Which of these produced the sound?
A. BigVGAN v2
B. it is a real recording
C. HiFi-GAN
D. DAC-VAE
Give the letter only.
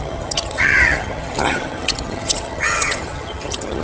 C